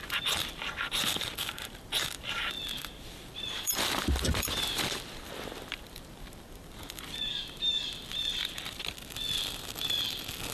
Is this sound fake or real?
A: fake